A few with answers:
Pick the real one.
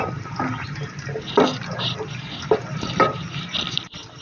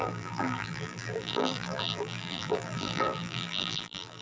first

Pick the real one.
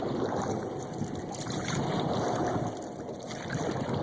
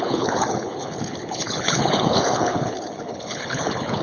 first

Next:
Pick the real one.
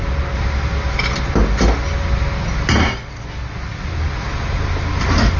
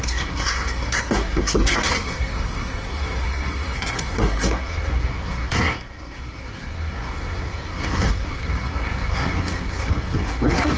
first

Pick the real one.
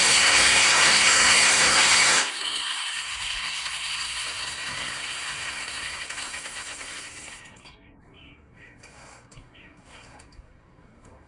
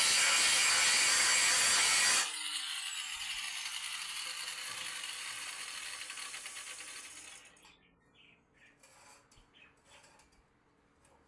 second